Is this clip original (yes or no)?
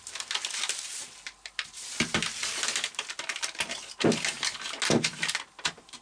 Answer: yes